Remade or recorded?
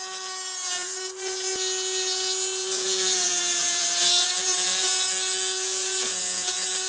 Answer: remade